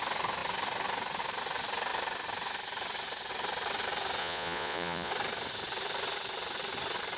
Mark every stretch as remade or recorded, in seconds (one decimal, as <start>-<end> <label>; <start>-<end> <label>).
0.0-4.2 recorded; 4.2-5.1 remade; 5.1-7.2 recorded